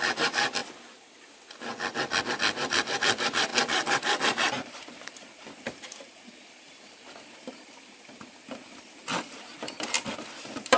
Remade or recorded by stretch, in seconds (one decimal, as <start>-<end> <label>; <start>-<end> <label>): 0.0-10.8 remade